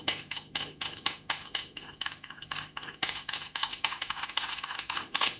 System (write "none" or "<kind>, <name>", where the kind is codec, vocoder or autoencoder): autoencoder, DAC-VAE